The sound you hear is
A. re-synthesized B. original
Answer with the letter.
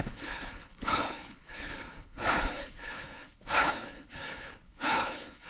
A